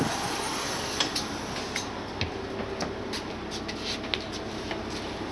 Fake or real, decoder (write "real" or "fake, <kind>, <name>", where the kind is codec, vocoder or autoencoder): real